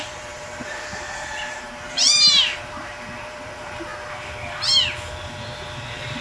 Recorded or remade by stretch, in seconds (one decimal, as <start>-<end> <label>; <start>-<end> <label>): 0.0-3.9 remade; 3.9-5.1 recorded; 5.1-6.2 remade